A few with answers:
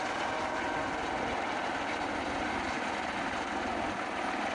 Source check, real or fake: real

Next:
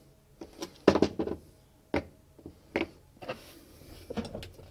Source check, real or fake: real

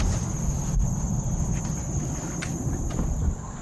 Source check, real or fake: real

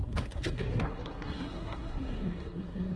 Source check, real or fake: fake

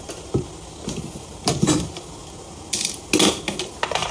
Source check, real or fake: real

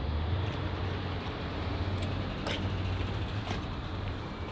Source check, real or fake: real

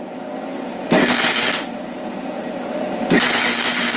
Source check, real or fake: fake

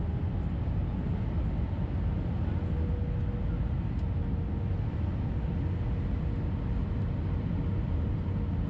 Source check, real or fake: real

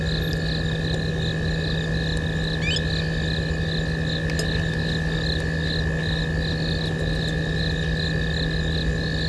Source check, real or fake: real